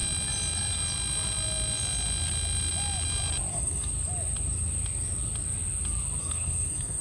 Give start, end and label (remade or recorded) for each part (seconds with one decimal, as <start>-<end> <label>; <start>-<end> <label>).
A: 0.0-3.5 recorded; 3.5-3.9 remade; 3.9-6.2 recorded; 6.2-7.0 remade